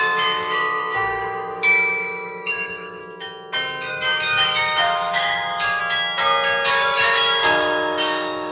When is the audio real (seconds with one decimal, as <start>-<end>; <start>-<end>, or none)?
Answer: 3.0-3.9; 5.8-6.7